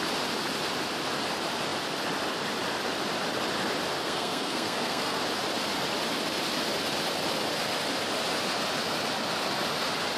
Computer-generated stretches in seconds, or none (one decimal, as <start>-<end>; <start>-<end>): 4.0-5.2

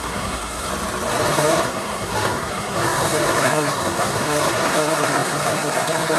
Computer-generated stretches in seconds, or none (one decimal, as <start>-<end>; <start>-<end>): 0.0-0.7; 1.3-6.2

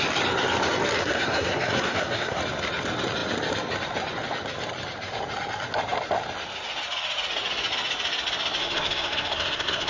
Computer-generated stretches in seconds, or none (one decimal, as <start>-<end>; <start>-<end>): 1.0-2.4; 8.6-9.9

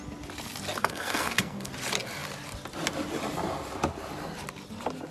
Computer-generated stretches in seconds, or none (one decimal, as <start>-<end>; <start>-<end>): 0.8-1.7